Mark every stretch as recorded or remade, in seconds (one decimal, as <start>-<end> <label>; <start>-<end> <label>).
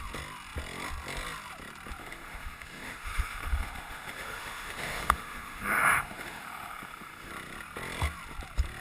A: 0.0-2.0 recorded; 2.0-7.3 remade; 7.3-8.8 recorded